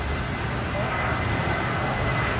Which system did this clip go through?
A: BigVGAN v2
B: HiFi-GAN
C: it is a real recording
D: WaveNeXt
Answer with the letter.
C